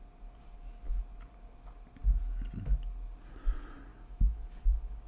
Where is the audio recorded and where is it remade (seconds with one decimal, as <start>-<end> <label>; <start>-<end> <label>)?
0.0-3.9 recorded; 3.9-4.5 remade; 4.5-5.1 recorded